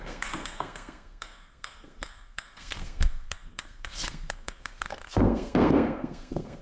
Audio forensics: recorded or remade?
remade